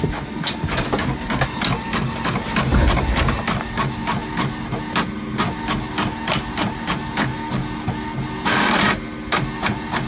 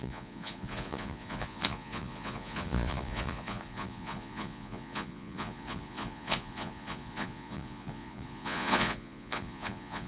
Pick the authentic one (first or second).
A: first